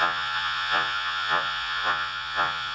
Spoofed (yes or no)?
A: yes